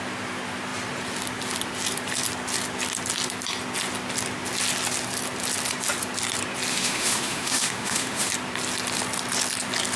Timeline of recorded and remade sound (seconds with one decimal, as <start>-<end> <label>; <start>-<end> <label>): 0.0-6.7 recorded; 6.7-8.3 remade; 8.3-10.0 recorded